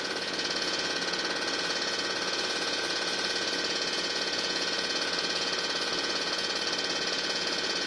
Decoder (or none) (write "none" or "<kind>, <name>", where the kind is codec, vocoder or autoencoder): vocoder, Vocos